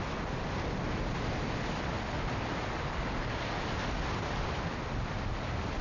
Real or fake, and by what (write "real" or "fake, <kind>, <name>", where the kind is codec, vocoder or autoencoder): real